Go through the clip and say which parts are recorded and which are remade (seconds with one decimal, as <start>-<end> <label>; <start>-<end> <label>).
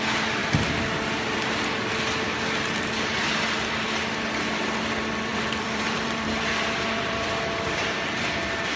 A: 0.0-5.3 recorded; 5.3-8.8 remade